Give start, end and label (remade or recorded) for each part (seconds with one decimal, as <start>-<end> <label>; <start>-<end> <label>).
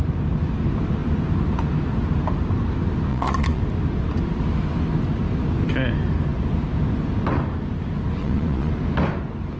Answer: 0.0-3.1 recorded; 3.1-3.6 remade; 3.6-8.2 recorded; 8.2-8.7 remade; 8.7-9.6 recorded